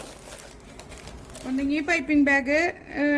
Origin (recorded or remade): recorded